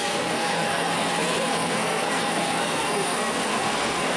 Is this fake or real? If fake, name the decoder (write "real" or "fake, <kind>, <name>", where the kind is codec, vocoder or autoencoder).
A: fake, codec, SNAC